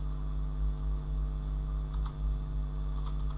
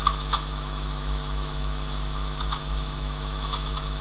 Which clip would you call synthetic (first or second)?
second